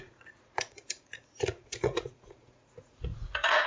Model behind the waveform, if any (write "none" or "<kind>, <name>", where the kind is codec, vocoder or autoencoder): vocoder, Vocos